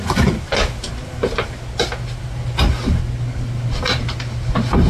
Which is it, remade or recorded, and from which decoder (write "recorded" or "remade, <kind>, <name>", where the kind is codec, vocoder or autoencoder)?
recorded